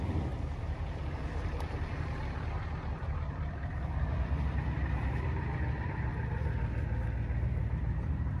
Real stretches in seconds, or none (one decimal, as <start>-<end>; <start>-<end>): 6.1-7.4